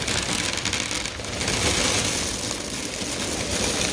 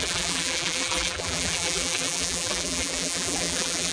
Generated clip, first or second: second